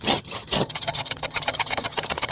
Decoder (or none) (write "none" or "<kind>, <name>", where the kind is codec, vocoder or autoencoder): vocoder, HiFi-GAN